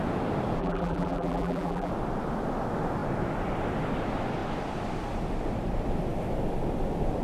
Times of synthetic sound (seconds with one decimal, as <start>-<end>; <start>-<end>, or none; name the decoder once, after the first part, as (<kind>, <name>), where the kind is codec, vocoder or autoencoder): 0.6-1.9 (vocoder, BigVGAN v2)